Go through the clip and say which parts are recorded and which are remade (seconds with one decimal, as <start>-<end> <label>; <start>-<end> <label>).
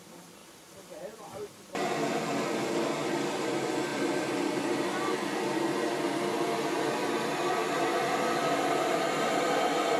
0.0-10.0 recorded